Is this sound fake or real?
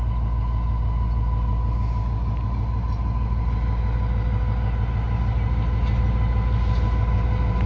real